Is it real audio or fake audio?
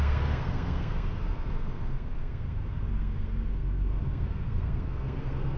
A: fake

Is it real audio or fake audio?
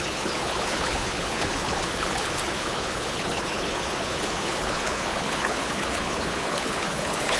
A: fake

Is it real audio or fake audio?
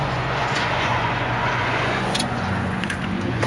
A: fake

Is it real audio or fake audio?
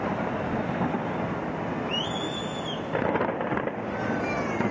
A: real